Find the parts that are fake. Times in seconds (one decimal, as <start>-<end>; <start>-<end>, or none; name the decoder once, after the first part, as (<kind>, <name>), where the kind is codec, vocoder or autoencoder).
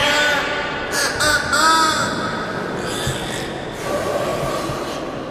none